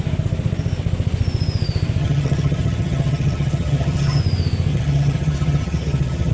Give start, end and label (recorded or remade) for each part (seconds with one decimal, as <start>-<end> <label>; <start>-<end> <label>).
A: 0.0-2.0 recorded; 2.0-4.2 remade; 4.2-4.7 recorded; 4.7-6.3 remade